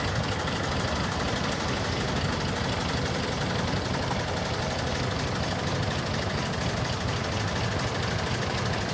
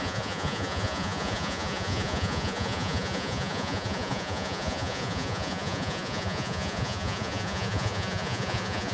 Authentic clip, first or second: first